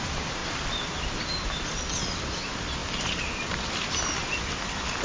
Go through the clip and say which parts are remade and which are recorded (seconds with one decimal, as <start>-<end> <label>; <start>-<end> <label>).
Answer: 0.0-5.0 recorded